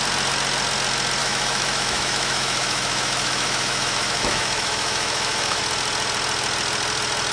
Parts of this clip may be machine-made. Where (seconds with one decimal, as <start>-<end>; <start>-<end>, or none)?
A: 1.2-5.6